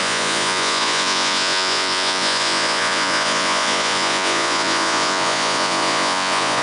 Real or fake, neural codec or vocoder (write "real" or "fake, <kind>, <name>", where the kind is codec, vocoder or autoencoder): fake, vocoder, Vocos